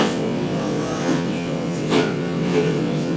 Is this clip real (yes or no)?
no